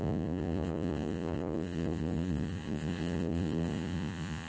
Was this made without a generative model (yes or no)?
no